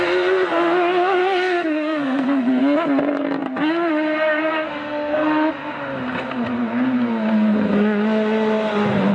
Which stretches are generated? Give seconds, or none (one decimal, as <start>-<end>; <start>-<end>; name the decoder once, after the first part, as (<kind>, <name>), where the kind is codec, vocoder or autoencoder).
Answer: 1.2-2.6 (codec, SNAC); 4.8-5.5